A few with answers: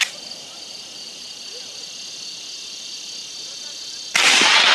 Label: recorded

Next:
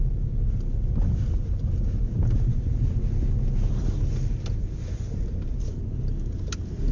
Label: recorded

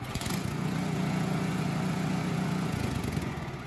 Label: remade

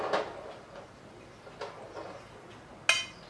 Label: recorded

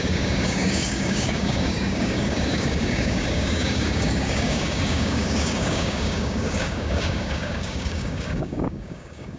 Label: remade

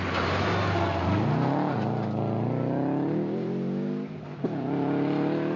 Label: recorded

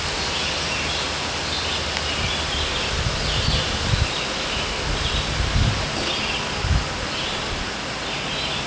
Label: recorded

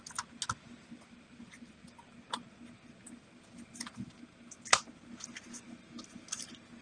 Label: recorded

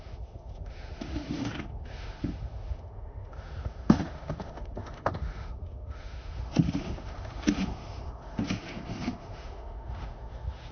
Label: remade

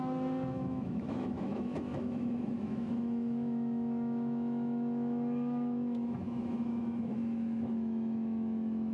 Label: remade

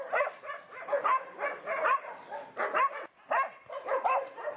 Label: recorded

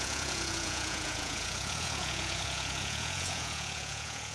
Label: remade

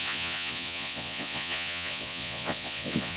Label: remade